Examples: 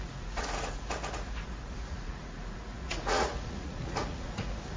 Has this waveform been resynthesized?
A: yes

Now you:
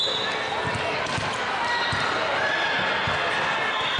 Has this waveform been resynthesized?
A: no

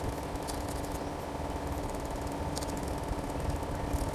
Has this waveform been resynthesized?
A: no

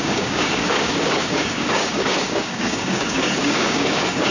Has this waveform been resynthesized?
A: yes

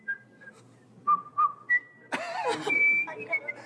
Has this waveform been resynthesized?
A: no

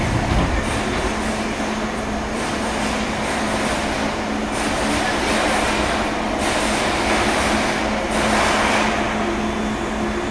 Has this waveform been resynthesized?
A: no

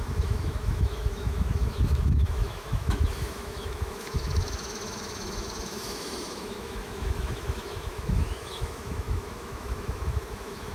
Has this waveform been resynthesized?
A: yes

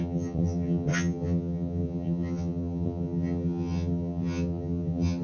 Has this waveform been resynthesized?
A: yes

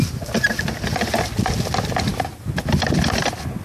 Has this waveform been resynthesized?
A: no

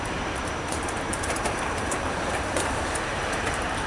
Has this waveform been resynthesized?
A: yes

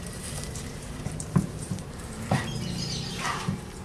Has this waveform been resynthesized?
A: yes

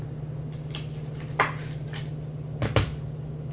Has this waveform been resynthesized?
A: no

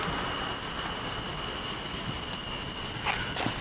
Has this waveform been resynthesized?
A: no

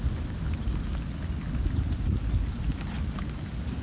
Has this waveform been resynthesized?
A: no